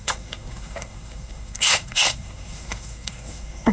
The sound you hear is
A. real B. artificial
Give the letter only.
B